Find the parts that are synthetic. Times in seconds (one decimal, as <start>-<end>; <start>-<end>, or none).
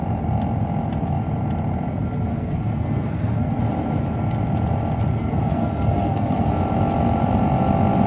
2.3-3.6; 5.2-6.5